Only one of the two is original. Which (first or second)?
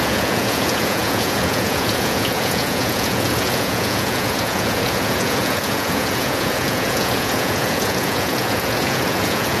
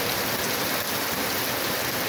second